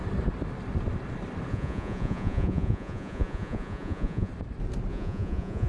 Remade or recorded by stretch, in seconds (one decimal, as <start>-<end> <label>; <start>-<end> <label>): 0.0-1.5 recorded; 1.5-4.3 remade; 4.3-4.9 recorded; 4.9-5.7 remade